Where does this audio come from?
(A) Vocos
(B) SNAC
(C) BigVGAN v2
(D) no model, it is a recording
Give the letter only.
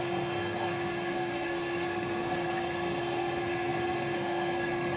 B